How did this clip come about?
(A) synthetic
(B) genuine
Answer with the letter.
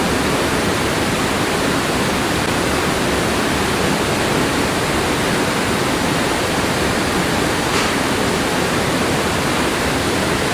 A